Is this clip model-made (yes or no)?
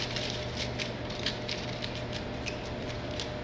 no